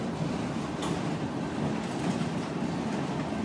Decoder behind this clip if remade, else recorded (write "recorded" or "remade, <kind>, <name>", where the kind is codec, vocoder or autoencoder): remade, vocoder, BigVGAN v2